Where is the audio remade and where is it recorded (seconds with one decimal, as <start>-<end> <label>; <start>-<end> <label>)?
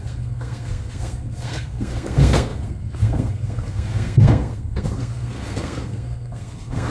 0.0-6.9 remade